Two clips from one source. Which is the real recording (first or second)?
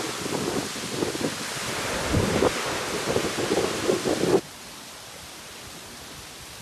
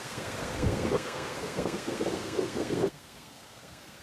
first